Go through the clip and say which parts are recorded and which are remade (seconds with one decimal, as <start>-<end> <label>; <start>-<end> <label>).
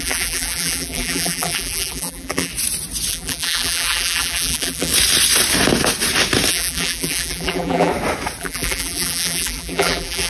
0.0-2.5 remade; 2.5-3.1 recorded; 3.1-4.9 remade; 4.9-6.5 recorded; 6.5-7.9 remade; 7.9-8.4 recorded; 8.4-10.3 remade